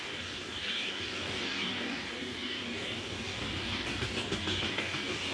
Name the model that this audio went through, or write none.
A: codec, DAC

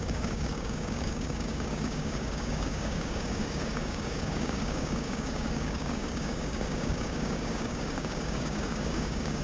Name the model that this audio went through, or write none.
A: codec, DAC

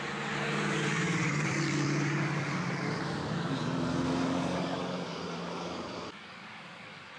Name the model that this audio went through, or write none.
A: codec, DAC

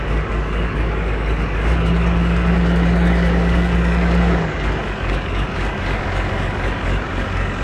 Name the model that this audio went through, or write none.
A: codec, DAC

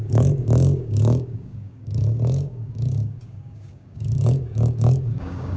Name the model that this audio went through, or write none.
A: codec, DAC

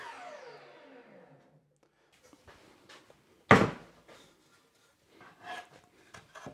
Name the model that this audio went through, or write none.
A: none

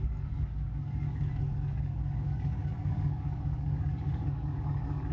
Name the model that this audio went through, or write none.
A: codec, DAC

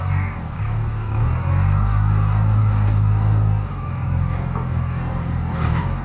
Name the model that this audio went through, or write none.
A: codec, DAC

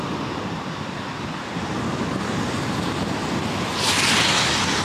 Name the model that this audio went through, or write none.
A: none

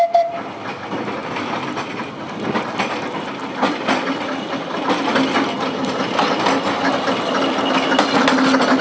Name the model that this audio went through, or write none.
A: none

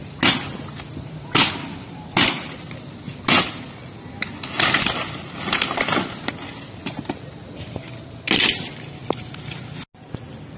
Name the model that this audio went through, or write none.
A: none